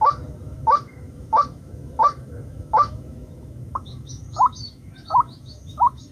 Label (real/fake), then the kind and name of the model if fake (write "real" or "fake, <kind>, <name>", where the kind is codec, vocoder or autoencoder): fake, autoencoder, DAC-VAE